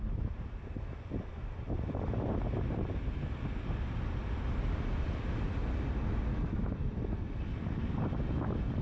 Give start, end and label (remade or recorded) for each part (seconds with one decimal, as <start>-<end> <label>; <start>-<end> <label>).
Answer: 0.0-6.3 recorded; 6.3-7.0 remade; 7.0-8.8 recorded